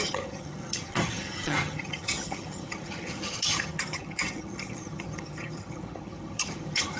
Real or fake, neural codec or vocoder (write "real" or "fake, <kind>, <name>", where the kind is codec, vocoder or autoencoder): fake, vocoder, HiFi-GAN